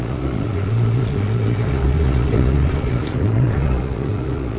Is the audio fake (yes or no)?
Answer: yes